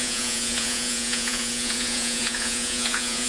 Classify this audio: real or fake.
fake